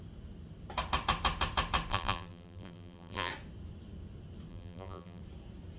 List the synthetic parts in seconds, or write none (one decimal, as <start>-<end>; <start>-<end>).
1.9-3.3; 4.5-5.2